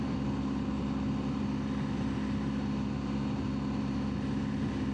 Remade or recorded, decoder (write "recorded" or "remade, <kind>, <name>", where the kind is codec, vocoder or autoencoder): recorded